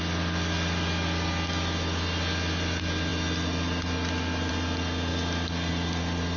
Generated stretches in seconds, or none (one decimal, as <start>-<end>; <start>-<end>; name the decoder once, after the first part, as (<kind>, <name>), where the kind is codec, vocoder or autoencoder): none

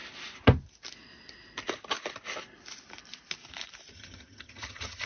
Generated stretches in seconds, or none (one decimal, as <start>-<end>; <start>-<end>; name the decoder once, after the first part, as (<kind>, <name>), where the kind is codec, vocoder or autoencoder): 3.9-5.1 (vocoder, HiFi-GAN)

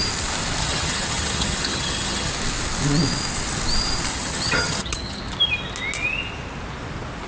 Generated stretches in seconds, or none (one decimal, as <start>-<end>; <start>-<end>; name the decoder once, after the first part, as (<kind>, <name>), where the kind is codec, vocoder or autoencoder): 0.6-2.3 (vocoder, HiFi-GAN); 4.1-5.2

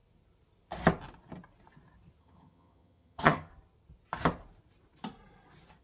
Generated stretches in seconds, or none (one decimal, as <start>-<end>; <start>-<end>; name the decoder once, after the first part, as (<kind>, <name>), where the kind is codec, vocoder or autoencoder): 2.2-3.5 (vocoder, HiFi-GAN)

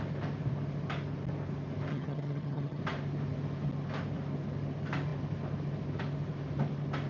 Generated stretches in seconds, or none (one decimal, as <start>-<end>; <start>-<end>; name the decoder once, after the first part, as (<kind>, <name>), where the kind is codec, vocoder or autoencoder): 1.9-2.8 (vocoder, HiFi-GAN)